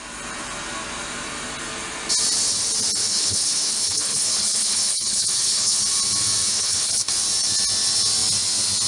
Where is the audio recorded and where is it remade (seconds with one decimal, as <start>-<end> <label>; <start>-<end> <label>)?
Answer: 0.0-3.0 recorded; 3.0-5.8 remade; 5.8-6.5 recorded; 6.5-7.1 remade; 7.1-8.9 recorded